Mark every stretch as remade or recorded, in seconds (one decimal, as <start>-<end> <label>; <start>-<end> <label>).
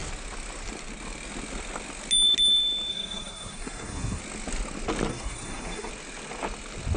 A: 0.0-2.9 recorded; 2.9-4.2 remade; 4.2-5.1 recorded; 5.1-5.9 remade; 5.9-7.0 recorded